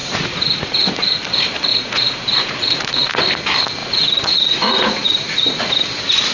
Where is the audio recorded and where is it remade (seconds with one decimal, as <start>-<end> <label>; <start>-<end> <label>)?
0.0-0.9 remade; 0.9-1.7 recorded; 1.7-3.2 remade; 3.2-3.8 recorded; 3.8-5.6 remade; 5.6-6.3 recorded